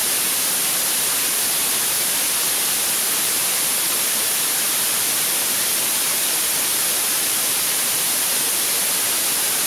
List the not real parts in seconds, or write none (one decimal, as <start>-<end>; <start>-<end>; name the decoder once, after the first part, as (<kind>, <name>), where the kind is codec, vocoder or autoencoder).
none